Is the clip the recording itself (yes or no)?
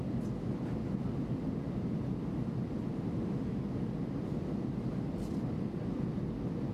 yes